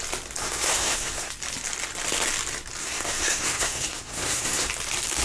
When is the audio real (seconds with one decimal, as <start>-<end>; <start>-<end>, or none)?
0.0-0.4; 1.3-2.8; 4.7-5.2